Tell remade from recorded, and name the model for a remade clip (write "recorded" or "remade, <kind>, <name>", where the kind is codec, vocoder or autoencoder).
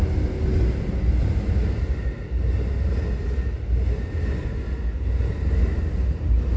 recorded